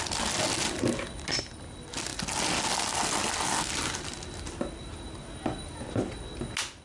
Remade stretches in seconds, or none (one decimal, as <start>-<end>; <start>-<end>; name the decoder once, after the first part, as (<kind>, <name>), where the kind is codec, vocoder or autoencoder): none